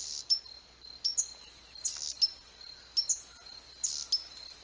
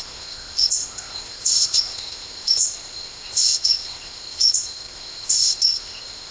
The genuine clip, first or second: first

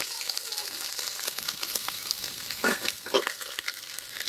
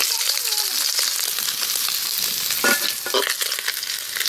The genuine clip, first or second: second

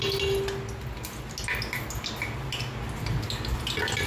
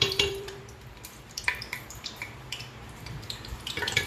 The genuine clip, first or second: first